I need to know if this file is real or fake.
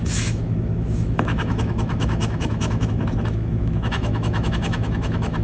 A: fake